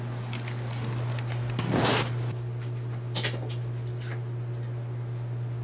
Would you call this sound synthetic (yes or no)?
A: no